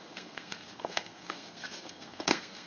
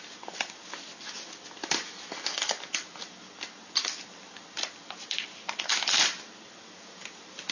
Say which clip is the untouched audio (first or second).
second